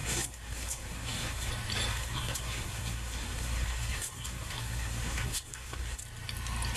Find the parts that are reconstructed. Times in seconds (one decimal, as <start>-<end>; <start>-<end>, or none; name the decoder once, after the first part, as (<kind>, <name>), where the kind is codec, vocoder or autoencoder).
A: 0.0-1.5 (codec, SNAC); 1.9-6.0